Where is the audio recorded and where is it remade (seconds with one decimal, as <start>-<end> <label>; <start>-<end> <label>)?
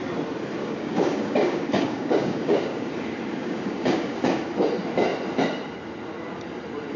0.0-0.6 recorded; 0.6-2.9 remade; 2.9-3.4 recorded; 3.4-4.4 remade; 4.4-7.0 recorded